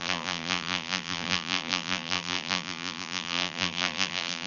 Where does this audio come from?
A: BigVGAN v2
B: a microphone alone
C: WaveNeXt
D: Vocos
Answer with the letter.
A